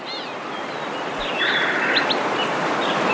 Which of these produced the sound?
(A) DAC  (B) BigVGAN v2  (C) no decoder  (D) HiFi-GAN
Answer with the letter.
C